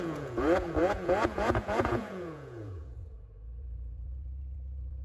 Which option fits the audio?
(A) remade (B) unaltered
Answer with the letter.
A